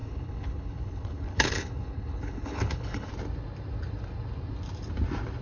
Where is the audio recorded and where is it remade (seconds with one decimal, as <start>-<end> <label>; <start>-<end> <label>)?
0.0-3.1 remade; 3.1-5.4 recorded